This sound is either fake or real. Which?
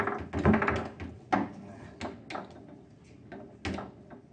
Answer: real